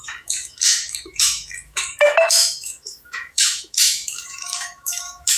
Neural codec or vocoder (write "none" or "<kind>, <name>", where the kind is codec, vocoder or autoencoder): autoencoder, DAC-VAE